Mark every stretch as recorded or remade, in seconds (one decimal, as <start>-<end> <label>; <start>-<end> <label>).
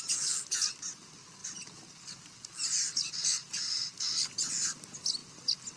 0.0-5.8 recorded